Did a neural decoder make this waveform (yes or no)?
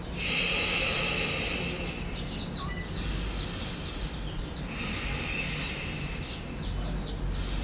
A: no